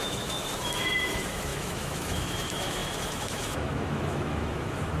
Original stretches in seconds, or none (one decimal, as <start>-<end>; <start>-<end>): none